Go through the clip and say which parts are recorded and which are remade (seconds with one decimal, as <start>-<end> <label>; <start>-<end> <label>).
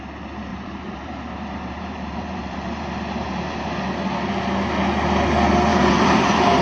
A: 0.0-0.5 recorded; 0.5-3.6 remade; 3.6-5.7 recorded; 5.7-6.6 remade